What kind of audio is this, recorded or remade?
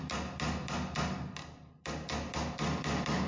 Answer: recorded